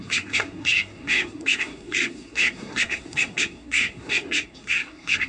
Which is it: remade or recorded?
remade